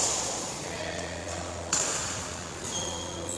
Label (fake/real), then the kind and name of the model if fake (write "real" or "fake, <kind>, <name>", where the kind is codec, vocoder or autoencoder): fake, vocoder, Vocos